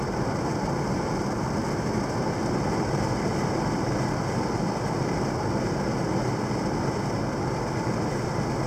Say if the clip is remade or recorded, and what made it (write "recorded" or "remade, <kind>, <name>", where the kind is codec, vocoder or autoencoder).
recorded